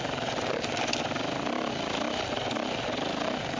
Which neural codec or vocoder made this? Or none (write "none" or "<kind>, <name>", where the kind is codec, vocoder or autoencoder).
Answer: none